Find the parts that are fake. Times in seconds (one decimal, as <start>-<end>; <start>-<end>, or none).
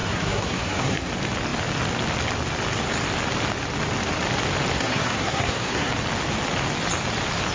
0.0-1.1; 4.7-5.9